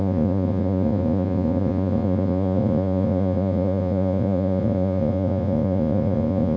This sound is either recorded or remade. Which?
remade